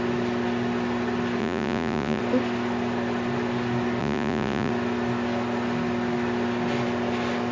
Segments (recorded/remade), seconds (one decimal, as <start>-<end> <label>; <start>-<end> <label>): 0.0-1.4 recorded; 1.4-2.2 remade; 2.2-4.0 recorded; 4.0-4.7 remade; 4.7-7.5 recorded